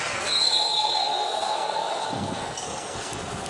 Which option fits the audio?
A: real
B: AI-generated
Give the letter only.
B